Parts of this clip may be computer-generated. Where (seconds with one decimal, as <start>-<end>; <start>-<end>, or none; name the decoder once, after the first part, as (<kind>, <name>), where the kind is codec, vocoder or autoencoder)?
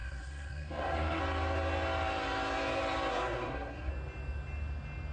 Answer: 0.0-1.2 (codec, SNAC); 3.1-3.9